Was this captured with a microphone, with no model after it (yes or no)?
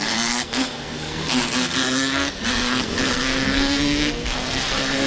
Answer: no